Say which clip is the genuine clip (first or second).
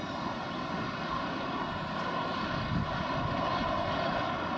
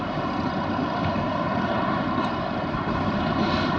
first